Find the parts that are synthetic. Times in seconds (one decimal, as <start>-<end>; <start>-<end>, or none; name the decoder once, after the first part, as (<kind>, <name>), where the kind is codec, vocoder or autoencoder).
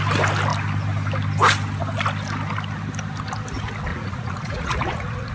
3.9-5.3 (vocoder, Vocos)